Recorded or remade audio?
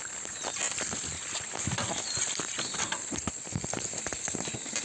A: recorded